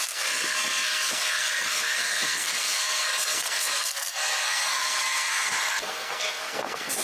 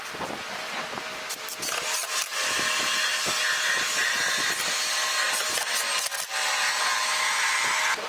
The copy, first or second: first